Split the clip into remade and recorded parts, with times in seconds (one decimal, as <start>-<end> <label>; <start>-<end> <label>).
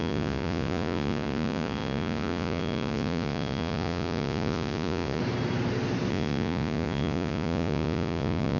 0.0-5.2 remade; 5.2-6.1 recorded; 6.1-8.6 remade